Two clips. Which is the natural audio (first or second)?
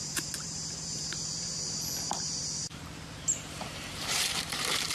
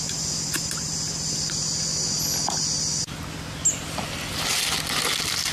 second